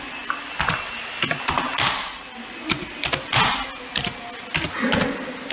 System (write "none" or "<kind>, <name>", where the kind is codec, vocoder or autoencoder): none